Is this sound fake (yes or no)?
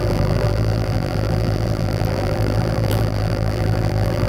yes